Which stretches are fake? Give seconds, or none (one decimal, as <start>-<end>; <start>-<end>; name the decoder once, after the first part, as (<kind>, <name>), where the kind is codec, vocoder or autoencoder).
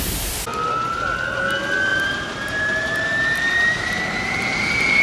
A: 1.9-5.0 (vocoder, BigVGAN v2)